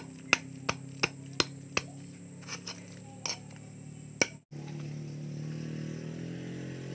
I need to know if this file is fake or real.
real